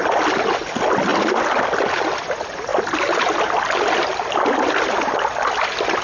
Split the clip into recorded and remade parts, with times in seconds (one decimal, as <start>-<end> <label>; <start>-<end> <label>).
0.0-6.0 recorded